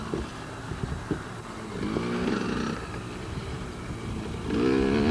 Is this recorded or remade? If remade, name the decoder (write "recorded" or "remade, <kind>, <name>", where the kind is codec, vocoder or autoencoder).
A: recorded